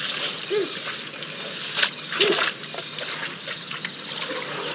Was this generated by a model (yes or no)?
no